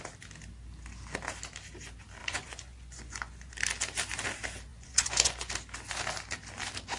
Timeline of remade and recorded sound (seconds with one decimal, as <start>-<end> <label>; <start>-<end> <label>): 0.0-2.2 recorded; 2.2-3.5 remade; 3.5-4.7 recorded; 4.7-5.5 remade; 5.5-7.0 recorded

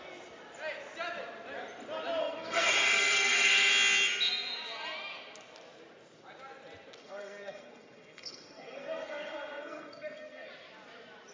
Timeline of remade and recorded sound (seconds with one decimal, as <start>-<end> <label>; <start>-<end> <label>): 0.0-2.2 recorded; 2.2-3.7 remade; 3.7-7.0 recorded; 7.0-10.5 remade; 10.5-11.3 recorded